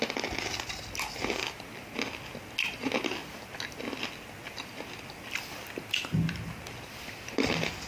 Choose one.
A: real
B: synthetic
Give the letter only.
A